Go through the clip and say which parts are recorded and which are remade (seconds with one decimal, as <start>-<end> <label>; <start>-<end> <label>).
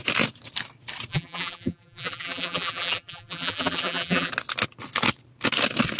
0.0-1.1 recorded; 1.1-4.3 remade; 4.3-6.0 recorded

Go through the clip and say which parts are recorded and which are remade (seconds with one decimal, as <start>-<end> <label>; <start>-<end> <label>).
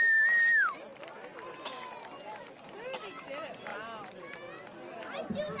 0.0-5.6 recorded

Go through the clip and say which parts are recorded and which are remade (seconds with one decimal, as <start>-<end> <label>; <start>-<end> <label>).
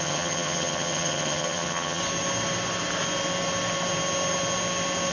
0.0-2.0 remade; 2.0-5.1 recorded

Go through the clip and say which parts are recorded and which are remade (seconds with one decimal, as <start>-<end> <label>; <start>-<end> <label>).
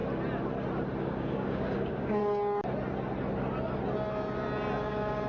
0.0-1.0 recorded; 1.0-2.2 remade; 2.2-4.8 recorded; 4.8-5.3 remade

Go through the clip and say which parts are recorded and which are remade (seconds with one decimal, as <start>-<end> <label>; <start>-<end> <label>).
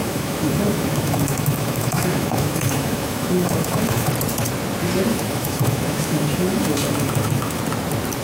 0.0-4.1 remade; 4.1-5.1 recorded; 5.1-7.6 remade; 7.6-8.2 recorded